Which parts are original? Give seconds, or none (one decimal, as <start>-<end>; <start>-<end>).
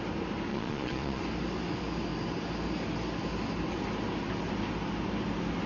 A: 0.0-0.5; 1.2-5.7